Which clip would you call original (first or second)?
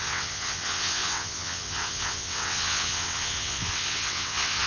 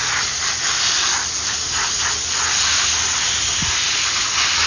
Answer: second